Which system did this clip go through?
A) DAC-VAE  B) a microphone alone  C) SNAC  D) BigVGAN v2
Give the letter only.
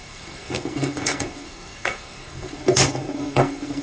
C